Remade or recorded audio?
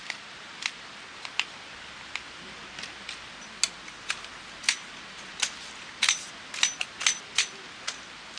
recorded